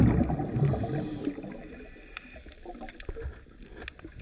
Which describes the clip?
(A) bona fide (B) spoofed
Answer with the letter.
A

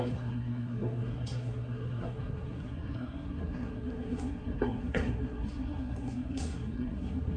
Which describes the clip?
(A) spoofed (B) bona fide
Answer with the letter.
A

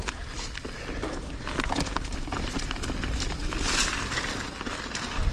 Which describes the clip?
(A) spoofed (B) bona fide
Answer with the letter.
B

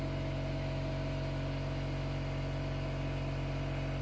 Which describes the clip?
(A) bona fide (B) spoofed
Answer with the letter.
A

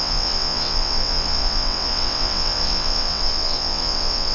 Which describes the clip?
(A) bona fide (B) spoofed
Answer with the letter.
B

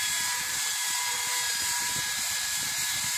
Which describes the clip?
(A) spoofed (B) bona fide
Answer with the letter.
A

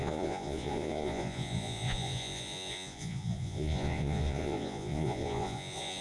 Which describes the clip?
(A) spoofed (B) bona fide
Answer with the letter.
A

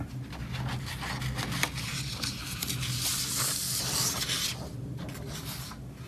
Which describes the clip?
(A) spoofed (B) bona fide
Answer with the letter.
B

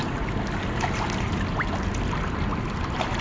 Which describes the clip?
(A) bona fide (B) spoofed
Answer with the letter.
A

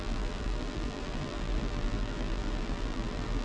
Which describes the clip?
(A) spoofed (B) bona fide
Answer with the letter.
A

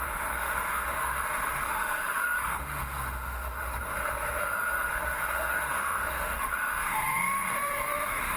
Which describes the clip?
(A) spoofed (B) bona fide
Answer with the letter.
A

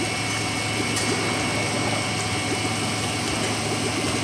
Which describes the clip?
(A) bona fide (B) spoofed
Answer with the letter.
A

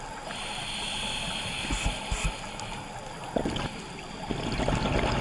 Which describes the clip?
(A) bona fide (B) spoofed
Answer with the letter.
A